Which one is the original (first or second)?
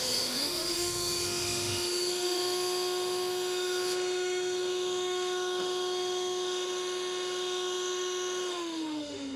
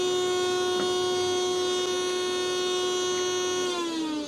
second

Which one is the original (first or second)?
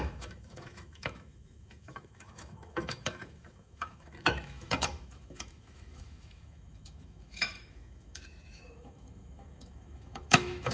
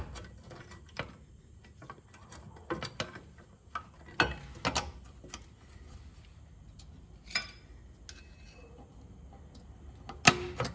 second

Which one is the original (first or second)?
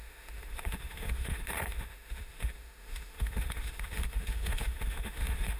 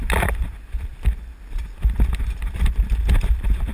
second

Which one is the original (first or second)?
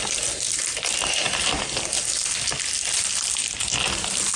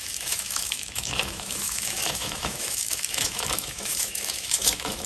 first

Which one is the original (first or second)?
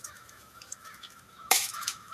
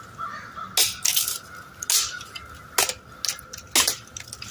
second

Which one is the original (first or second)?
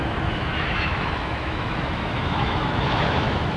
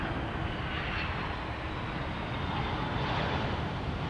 second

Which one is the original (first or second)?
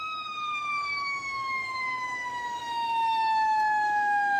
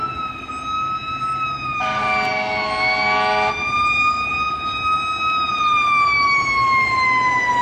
second